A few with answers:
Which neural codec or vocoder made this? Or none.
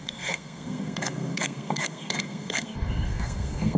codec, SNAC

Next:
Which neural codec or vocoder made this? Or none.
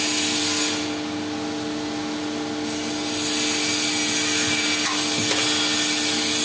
none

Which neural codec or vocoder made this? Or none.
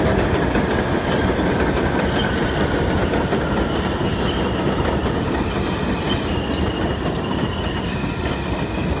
none